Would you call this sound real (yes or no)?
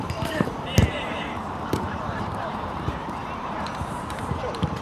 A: no